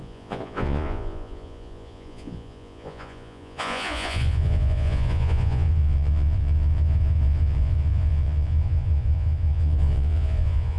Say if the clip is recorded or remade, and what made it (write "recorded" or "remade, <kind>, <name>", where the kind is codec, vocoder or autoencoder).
remade, vocoder, Vocos